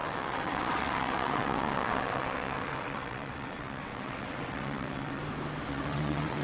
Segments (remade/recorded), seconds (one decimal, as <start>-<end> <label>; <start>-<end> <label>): 0.0-5.2 remade; 5.2-5.7 recorded; 5.7-6.4 remade